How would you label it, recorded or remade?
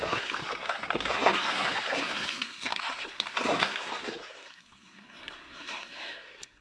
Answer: remade